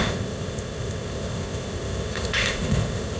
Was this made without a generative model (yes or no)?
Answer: no